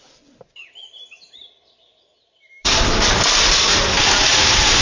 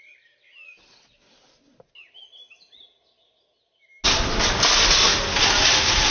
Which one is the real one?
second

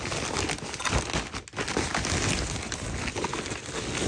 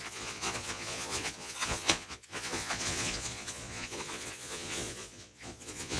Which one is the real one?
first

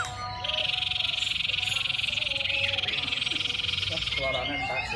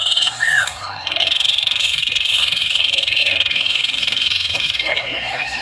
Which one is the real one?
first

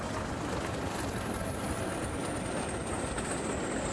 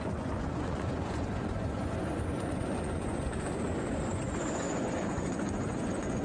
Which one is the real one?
first